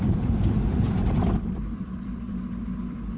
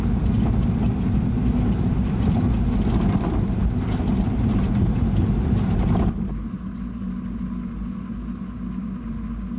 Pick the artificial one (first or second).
first